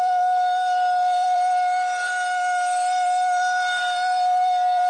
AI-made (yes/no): yes